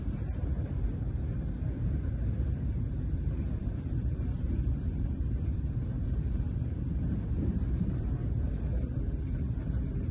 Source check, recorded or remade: remade